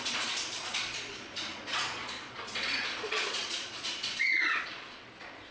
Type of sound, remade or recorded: remade